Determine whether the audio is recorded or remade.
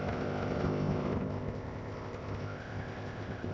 remade